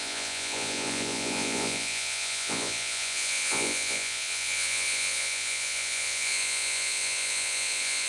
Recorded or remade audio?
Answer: remade